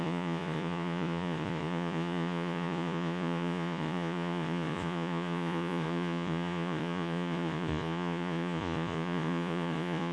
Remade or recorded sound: remade